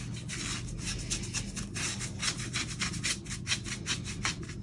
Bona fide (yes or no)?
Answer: yes